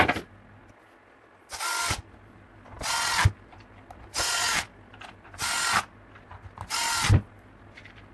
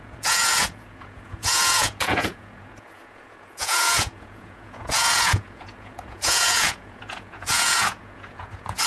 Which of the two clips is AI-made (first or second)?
second